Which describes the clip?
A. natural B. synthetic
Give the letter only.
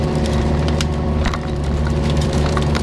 B